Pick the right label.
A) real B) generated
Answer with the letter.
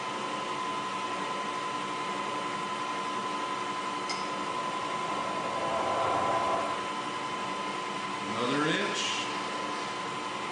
A